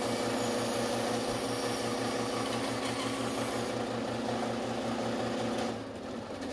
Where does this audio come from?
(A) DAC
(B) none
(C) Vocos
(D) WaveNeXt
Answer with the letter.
B